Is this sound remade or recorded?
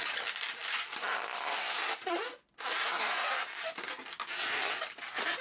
recorded